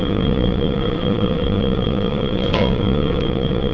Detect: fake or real fake